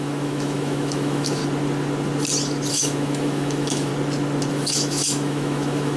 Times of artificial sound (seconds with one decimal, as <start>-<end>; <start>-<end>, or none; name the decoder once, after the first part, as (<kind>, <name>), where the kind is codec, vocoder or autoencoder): 0.0-1.4 (autoencoder, DAC-VAE); 2.7-3.9; 4.5-6.0